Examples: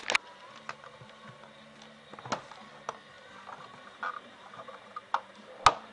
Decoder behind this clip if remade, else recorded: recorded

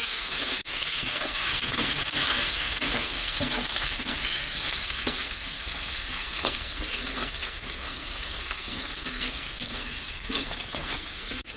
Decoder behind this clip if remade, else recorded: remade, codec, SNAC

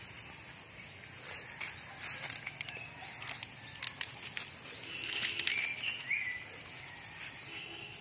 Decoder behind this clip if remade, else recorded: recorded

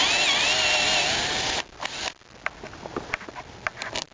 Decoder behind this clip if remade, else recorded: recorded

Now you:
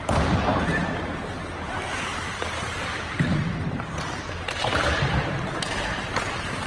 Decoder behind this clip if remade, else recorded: remade, vocoder, BigVGAN v2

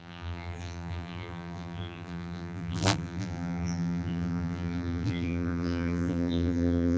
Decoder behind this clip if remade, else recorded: remade, vocoder, BigVGAN v2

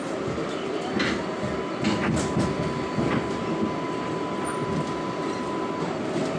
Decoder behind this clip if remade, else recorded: recorded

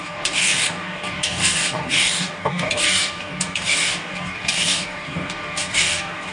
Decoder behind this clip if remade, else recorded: remade, codec, DAC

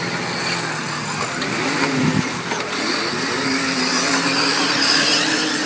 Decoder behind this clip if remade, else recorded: recorded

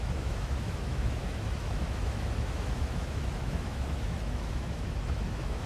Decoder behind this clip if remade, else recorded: remade, autoencoder, DAC-VAE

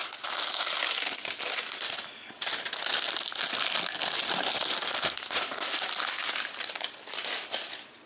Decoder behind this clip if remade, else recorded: recorded